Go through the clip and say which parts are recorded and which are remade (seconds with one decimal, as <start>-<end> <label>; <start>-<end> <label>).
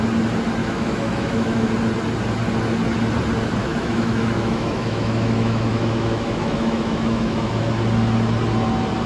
0.0-0.6 recorded; 0.6-1.7 remade; 1.7-3.6 recorded; 3.6-7.7 remade; 7.7-9.1 recorded